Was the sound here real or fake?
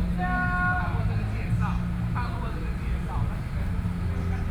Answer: real